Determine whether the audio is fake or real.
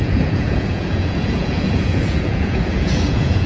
fake